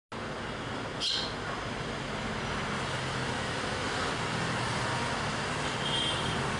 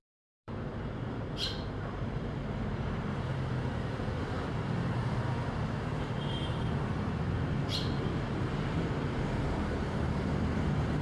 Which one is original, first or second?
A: first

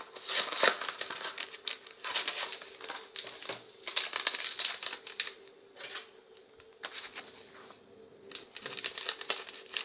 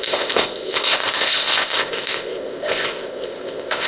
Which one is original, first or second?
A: first